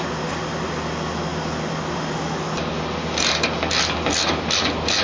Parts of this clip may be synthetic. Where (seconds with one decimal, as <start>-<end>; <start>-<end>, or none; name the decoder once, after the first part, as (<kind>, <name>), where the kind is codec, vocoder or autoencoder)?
none